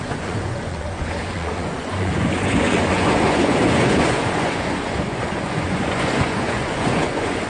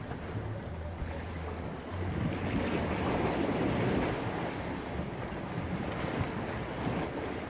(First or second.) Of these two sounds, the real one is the second